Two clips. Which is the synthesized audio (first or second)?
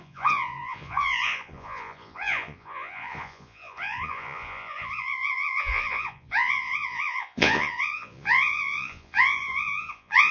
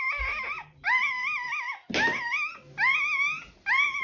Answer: first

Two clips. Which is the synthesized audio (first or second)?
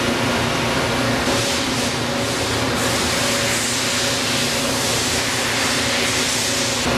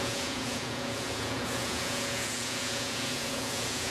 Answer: second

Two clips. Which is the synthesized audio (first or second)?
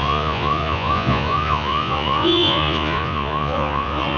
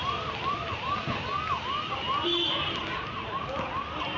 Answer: first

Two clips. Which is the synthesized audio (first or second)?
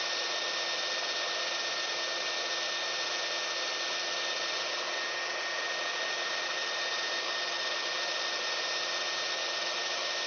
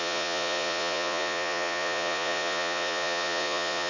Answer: second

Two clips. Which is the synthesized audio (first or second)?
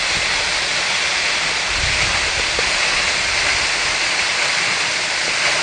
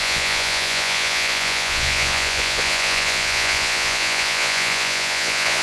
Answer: second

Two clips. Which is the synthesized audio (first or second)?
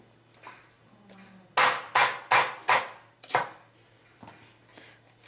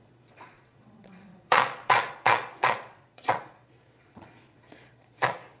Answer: second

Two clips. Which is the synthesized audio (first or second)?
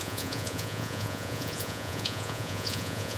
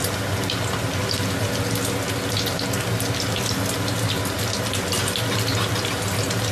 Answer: first